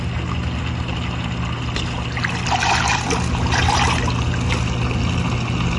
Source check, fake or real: real